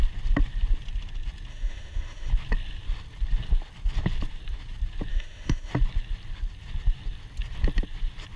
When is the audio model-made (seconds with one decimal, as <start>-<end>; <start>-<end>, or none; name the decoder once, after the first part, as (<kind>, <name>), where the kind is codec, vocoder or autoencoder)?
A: 1.5-2.3 (autoencoder, DAC-VAE); 5.1-5.7